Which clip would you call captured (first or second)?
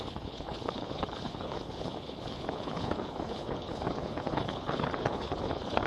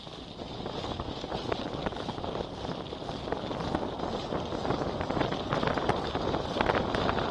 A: second